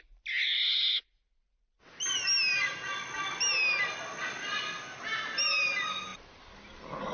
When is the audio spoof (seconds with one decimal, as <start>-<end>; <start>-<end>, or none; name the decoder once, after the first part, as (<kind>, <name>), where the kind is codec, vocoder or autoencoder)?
none